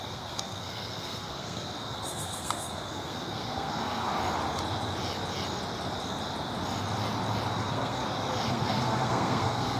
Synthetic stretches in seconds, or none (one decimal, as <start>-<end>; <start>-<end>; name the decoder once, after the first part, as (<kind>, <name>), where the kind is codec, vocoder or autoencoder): 0.0-4.1 (codec, SNAC); 7.5-8.0; 8.5-9.8